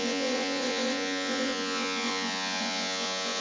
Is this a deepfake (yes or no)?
yes